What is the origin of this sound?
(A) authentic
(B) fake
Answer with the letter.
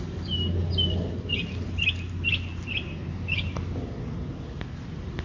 A